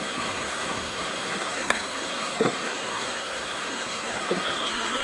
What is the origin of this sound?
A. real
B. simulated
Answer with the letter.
B